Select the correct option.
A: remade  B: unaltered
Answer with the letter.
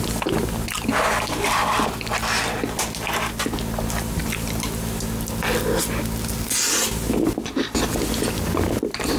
B